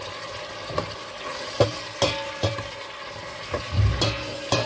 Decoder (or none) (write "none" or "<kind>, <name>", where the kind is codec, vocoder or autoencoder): none